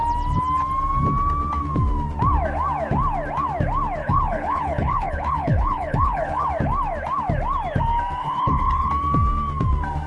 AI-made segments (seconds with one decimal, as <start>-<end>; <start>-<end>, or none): 4.0-6.5; 8.2-8.9